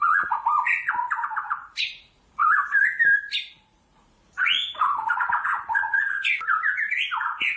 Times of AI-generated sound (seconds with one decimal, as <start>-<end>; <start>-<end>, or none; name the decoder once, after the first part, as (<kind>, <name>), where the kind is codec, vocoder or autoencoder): 0.0-2.4 (vocoder, Vocos); 3.5-7.6